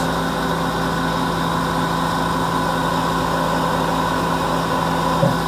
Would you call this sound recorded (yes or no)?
yes